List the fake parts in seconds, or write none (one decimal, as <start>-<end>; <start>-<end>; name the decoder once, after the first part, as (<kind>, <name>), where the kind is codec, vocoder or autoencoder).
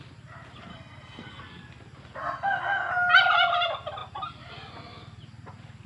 0.7-1.4 (codec, SNAC); 2.2-2.9